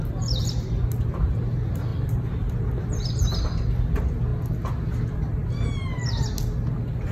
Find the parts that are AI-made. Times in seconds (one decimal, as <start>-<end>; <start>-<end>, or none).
1.9-2.5